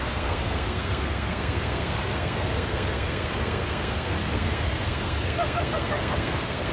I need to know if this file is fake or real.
fake